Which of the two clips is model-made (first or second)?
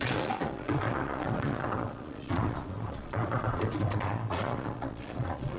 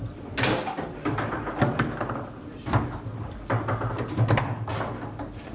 first